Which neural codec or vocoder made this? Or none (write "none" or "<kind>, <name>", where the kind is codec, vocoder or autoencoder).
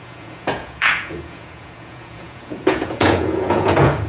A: vocoder, Vocos